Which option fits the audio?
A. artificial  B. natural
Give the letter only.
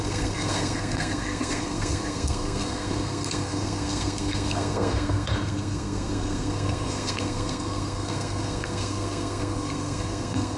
A